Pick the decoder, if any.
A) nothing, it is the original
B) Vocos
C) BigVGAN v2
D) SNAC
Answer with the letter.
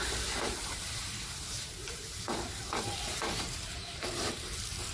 C